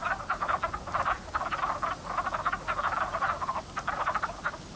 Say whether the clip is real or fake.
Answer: real